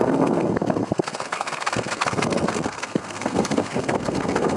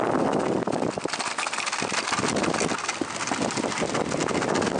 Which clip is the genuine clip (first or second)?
second